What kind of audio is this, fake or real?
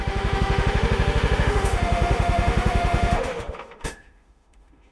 fake